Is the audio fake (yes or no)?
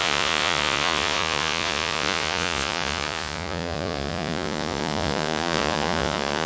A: yes